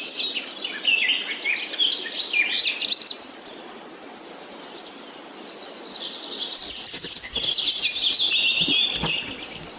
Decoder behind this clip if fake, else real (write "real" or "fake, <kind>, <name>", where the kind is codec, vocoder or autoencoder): real